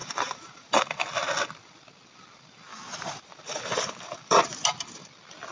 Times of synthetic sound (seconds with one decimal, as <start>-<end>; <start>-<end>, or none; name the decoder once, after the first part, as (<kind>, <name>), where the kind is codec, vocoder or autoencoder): 0.0-1.0 (vocoder, BigVGAN v2); 2.7-4.4